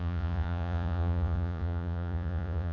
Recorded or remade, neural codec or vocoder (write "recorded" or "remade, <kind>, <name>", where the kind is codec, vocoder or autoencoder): remade, vocoder, Vocos